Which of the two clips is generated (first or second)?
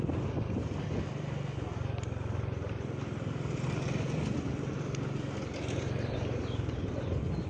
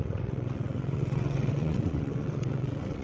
second